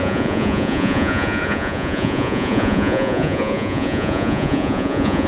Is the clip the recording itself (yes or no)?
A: no